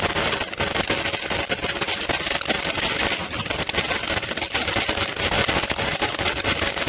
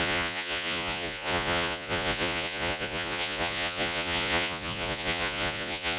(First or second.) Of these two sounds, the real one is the first